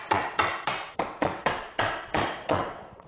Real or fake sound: fake